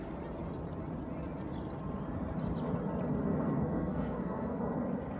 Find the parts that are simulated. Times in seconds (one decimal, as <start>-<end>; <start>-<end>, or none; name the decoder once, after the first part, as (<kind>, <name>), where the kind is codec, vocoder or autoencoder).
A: 3.3-4.7 (codec, SNAC)